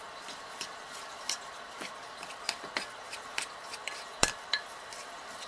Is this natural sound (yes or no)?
no